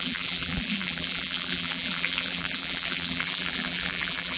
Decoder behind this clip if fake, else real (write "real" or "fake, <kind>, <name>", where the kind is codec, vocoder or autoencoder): fake, vocoder, BigVGAN v2